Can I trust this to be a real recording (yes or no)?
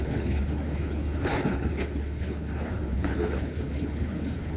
no